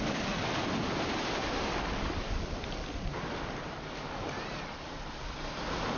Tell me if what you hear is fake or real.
real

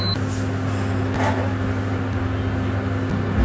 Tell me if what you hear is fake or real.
real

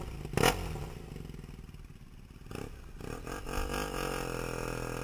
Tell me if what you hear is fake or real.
real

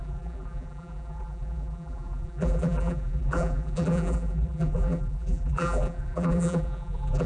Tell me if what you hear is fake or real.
fake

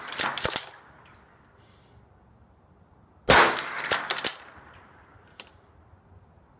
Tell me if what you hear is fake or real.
real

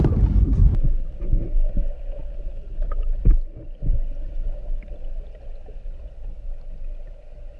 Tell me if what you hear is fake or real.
real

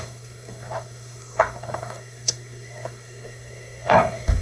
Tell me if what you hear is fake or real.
fake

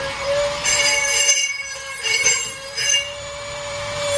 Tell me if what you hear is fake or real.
fake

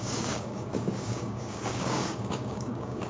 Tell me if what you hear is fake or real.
fake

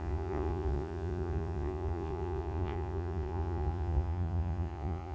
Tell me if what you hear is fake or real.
fake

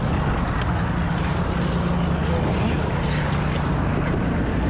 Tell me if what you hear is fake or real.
real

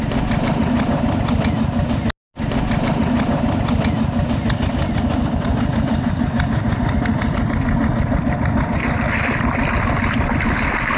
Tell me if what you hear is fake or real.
real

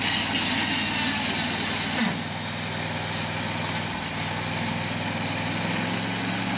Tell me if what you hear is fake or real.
real